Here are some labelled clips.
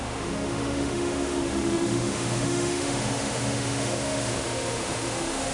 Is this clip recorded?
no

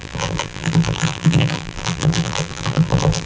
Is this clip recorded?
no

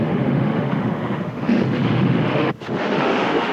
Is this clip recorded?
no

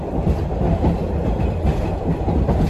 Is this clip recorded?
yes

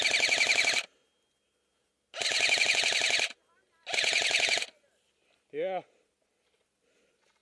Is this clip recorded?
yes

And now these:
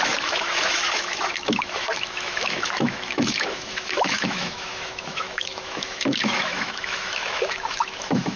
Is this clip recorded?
no